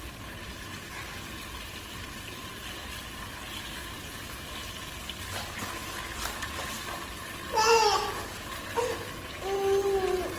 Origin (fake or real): real